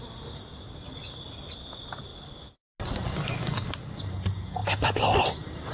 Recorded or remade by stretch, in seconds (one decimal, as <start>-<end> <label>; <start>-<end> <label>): 0.0-4.6 recorded; 4.6-5.7 remade